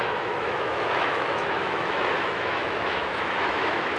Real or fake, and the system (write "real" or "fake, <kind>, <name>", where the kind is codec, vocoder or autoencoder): fake, autoencoder, DAC-VAE